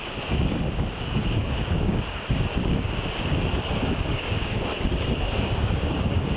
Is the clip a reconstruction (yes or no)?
yes